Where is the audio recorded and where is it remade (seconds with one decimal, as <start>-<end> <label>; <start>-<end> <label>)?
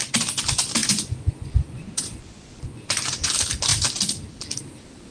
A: 0.0-0.8 recorded; 0.8-3.3 remade; 3.3-5.1 recorded